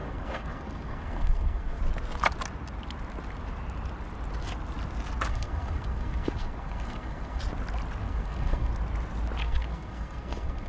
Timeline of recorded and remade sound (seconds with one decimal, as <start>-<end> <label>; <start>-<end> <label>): 0.0-1.8 remade; 1.8-5.3 recorded; 5.3-7.4 remade; 7.4-8.0 recorded; 8.0-8.7 remade; 8.7-9.4 recorded; 9.4-10.7 remade